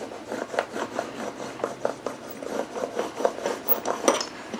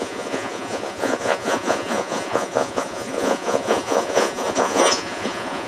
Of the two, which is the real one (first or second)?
first